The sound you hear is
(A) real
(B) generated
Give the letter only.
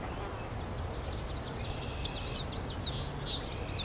A